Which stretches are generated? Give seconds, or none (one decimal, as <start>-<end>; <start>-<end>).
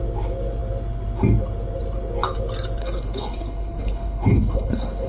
2.8-5.1